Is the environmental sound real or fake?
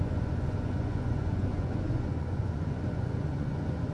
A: fake